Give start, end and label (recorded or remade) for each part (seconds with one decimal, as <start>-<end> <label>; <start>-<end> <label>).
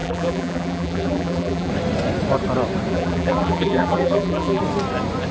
0.0-1.7 remade; 1.7-2.9 recorded; 2.9-4.6 remade; 4.6-5.3 recorded